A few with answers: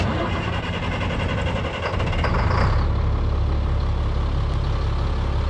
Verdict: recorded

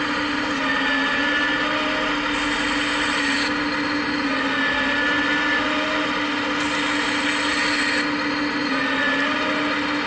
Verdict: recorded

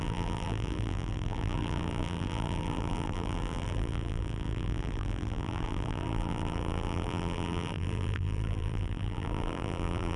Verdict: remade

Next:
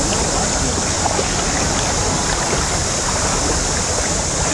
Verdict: remade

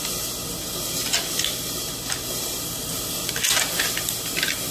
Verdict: recorded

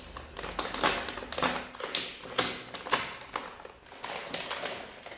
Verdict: recorded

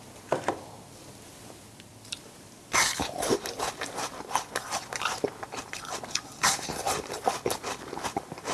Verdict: remade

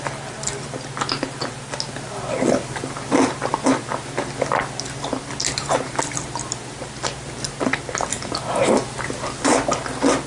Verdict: recorded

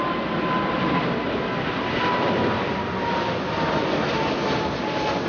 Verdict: recorded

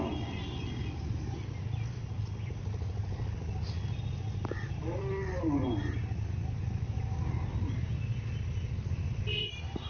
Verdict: recorded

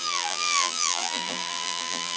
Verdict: remade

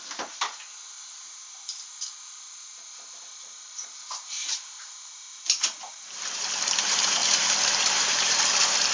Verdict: remade